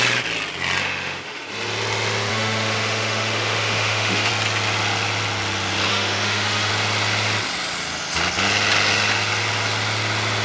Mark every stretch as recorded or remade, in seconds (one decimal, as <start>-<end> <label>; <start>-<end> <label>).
0.0-0.8 recorded; 0.8-1.5 remade; 1.5-2.3 recorded; 2.3-4.3 remade; 4.3-5.9 recorded; 5.9-6.7 remade; 6.7-10.4 recorded